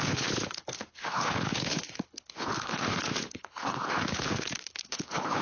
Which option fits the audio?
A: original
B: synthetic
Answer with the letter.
B